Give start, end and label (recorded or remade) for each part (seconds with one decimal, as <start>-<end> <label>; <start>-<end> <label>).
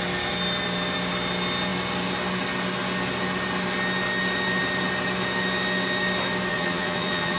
0.0-6.5 recorded; 6.5-7.4 remade